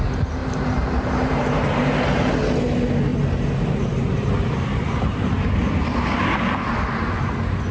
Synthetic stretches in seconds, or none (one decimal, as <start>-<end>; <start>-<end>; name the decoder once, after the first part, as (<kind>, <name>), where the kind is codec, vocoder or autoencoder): 0.4-2.3 (vocoder, BigVGAN v2); 3.1-5.3